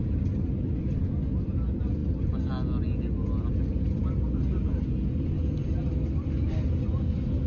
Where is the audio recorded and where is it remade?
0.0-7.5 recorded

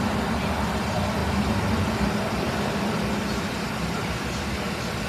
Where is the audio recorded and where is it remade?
0.0-5.1 recorded

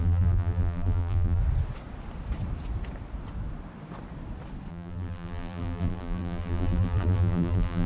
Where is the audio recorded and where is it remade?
0.0-1.4 remade; 1.4-4.7 recorded; 4.7-7.9 remade

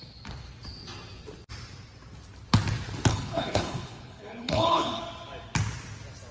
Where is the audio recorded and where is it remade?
0.0-3.1 recorded; 3.1-5.0 remade; 5.0-6.3 recorded

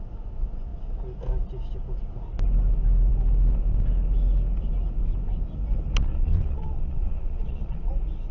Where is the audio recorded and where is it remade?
0.0-6.1 recorded; 6.1-7.9 remade; 7.9-8.3 recorded